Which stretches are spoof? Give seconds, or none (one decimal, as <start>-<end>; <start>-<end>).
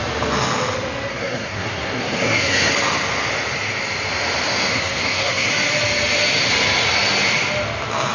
1.1-2.7; 4.7-5.5